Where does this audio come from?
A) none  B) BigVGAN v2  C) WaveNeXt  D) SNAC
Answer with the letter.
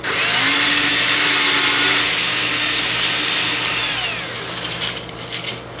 A